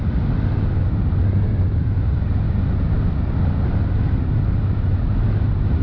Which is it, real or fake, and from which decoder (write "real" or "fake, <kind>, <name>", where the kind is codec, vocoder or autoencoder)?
real